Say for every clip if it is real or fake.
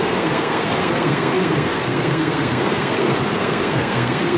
fake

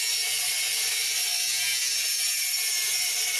real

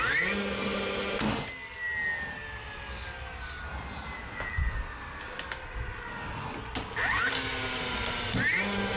real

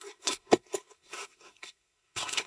fake